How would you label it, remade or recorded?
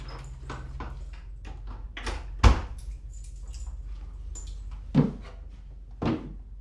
recorded